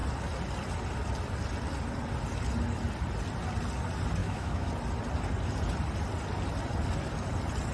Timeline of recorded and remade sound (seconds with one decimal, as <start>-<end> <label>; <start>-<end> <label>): 0.0-4.2 recorded; 4.2-4.7 remade; 4.7-7.7 recorded